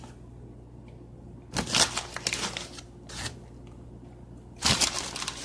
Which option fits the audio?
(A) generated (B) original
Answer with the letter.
B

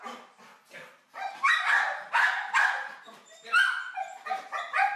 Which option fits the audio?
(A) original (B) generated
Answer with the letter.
A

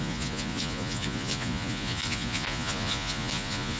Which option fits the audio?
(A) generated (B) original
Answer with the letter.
A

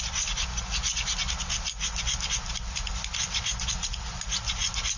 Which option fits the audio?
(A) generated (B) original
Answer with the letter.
B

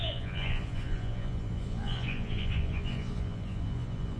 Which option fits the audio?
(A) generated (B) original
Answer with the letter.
A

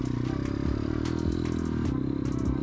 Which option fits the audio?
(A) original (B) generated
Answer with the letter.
A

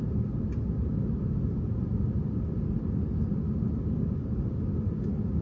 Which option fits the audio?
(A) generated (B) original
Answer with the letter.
B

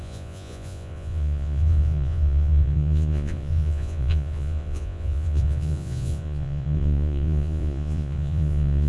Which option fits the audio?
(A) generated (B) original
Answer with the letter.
A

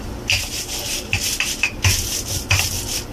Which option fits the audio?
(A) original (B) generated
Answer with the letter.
A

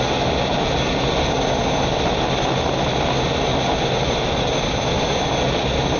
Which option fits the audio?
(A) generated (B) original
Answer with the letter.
B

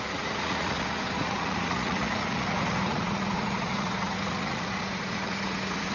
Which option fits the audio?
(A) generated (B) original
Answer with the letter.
A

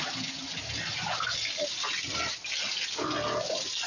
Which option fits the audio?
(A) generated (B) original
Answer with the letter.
B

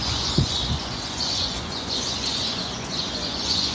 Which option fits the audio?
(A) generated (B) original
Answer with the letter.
A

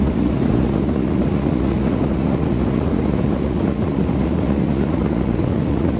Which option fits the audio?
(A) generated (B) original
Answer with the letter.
A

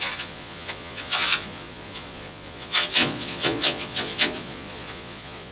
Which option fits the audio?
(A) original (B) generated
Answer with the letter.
B